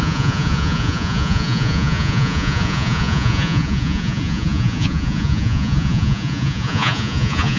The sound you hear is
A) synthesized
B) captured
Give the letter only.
A